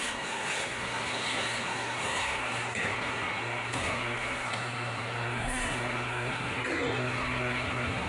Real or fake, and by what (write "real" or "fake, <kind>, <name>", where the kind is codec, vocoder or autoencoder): fake, codec, SNAC